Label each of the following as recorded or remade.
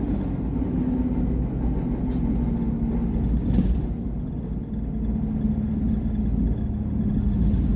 recorded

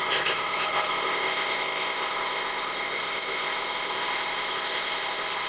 remade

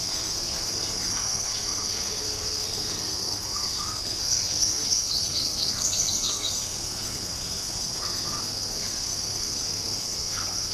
remade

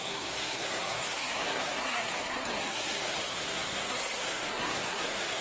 remade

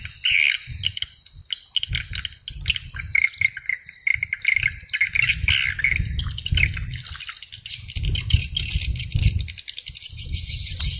recorded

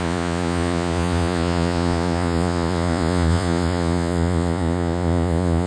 remade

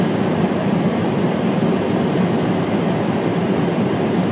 recorded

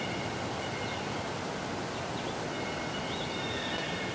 recorded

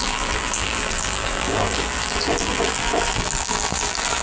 remade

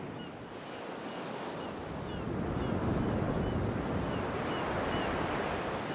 recorded